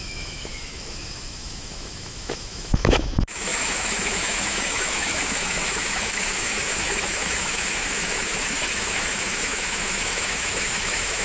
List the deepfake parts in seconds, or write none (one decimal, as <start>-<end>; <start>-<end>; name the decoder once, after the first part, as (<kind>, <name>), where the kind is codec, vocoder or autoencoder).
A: 0.0-11.2 (autoencoder, DAC-VAE)